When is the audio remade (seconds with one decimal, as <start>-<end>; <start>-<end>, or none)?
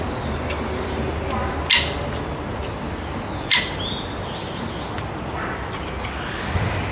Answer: none